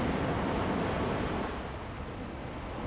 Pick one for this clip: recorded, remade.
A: recorded